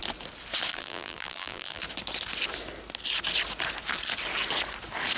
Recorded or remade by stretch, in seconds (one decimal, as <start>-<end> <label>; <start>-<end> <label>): 0.0-0.7 recorded; 0.7-1.8 remade; 1.8-5.2 recorded